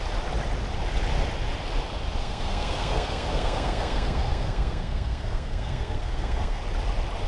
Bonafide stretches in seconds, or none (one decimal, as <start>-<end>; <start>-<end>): 0.0-2.2; 6.6-7.3